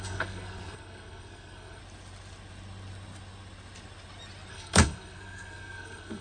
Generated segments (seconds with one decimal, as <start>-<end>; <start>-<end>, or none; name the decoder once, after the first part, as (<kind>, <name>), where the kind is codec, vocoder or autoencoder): 0.0-1.8 (codec, SNAC); 4.5-6.2